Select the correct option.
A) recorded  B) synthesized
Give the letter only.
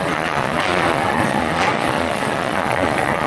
B